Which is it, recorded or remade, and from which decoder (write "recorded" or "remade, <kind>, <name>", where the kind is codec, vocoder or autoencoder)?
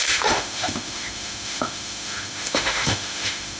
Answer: remade, autoencoder, DAC-VAE